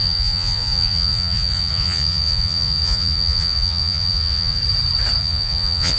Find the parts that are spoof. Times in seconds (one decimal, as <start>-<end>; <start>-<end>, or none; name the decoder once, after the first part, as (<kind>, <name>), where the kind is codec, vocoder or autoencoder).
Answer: 0.0-4.6 (vocoder, Vocos); 5.2-6.0